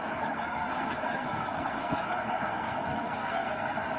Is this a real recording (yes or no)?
no